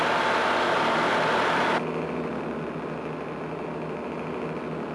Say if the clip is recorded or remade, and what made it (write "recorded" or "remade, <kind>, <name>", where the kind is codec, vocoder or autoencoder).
recorded